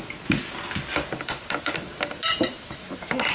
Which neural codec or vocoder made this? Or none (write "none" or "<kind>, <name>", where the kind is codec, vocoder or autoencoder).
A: none